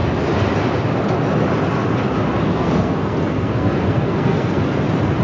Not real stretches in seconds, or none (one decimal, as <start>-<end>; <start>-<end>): 2.5-4.6